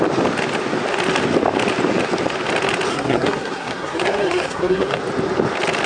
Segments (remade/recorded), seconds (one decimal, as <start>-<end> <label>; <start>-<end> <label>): 0.0-2.9 recorded; 2.9-5.0 remade; 5.0-5.9 recorded